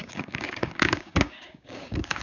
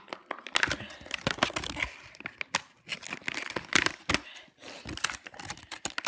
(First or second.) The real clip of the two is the second